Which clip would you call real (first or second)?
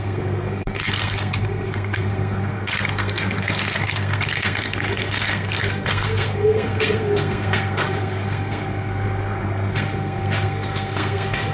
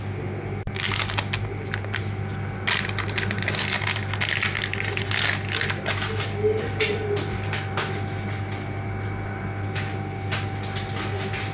second